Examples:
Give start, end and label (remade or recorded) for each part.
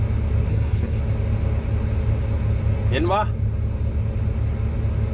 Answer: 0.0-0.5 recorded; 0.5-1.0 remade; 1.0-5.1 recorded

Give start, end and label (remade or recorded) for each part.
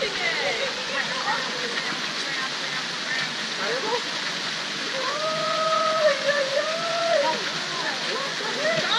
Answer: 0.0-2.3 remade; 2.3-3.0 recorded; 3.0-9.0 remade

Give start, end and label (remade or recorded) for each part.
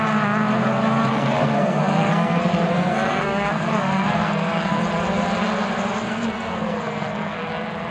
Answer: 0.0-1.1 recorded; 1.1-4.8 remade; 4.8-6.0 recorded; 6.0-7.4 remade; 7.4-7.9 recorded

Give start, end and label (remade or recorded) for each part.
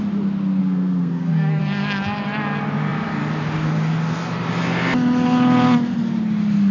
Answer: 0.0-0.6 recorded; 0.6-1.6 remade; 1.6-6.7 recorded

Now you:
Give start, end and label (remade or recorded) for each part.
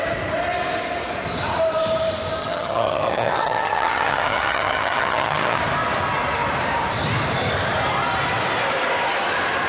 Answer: 0.0-2.4 recorded; 2.4-5.6 remade; 5.6-9.7 recorded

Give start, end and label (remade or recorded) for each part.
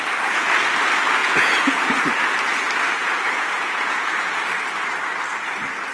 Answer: 0.0-1.2 recorded; 1.2-2.0 remade; 2.0-3.0 recorded; 3.0-4.4 remade; 4.4-5.9 recorded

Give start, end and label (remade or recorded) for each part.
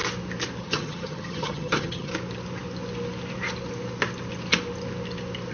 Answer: 0.0-0.6 recorded; 0.6-2.1 remade; 2.1-5.5 recorded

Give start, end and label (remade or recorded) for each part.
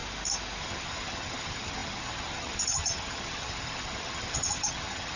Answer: 0.0-0.6 recorded; 0.6-5.2 remade